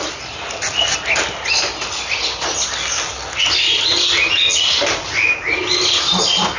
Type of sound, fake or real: real